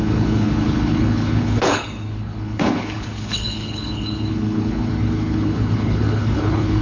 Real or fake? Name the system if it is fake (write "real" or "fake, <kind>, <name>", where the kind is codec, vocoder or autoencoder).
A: fake, codec, HILCodec